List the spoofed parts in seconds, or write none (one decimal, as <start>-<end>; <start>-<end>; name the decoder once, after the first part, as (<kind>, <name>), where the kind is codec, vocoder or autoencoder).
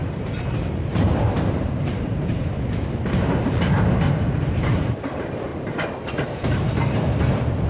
0.0-5.5 (vocoder, BigVGAN v2); 6.1-7.7